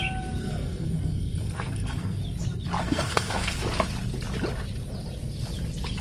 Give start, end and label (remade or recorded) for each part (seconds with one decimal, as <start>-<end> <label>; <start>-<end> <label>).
0.0-0.4 recorded; 0.4-2.2 remade; 2.2-2.8 recorded; 2.8-3.6 remade; 3.6-6.0 recorded